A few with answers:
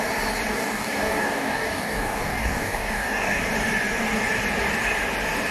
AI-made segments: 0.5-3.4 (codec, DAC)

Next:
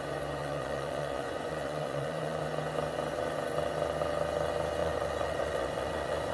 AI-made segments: 0.4-2.4 (vocoder, Vocos); 4.8-6.3

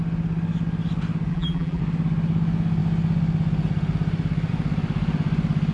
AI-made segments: 1.3-1.8 (vocoder, BigVGAN v2)

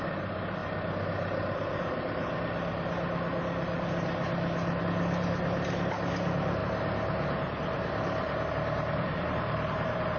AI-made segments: none

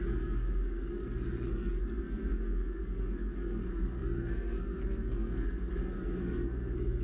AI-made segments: 0.0-7.0 (codec, SNAC)

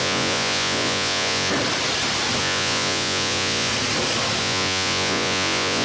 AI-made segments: 0.0-1.5 (vocoder, Vocos); 2.4-3.7; 4.4-5.8